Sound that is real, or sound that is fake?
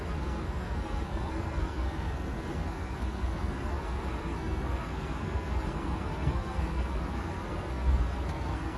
fake